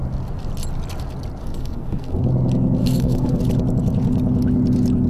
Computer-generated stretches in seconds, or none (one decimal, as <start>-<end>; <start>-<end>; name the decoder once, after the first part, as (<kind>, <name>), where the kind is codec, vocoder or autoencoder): 1.4-2.2 (codec, SNAC); 2.8-3.4